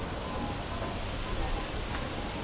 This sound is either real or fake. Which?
real